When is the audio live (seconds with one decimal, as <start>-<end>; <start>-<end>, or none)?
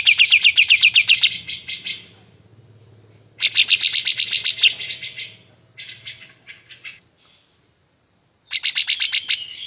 0.0-9.7